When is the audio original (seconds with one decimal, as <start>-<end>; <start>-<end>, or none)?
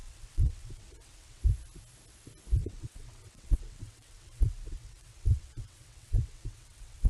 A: 1.4-2.6